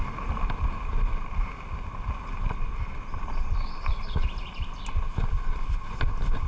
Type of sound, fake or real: real